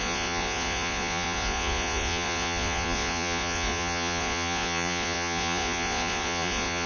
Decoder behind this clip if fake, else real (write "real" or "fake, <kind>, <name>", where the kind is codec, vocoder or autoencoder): fake, vocoder, Vocos